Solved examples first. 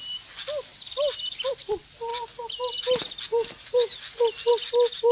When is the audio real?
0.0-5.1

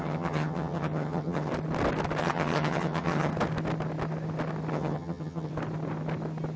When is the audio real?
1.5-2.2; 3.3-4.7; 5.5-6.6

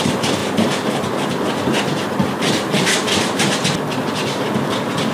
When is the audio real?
0.0-0.4; 1.5-5.1